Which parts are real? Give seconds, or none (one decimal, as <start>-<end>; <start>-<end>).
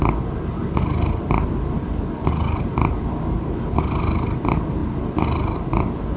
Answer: 0.6-1.1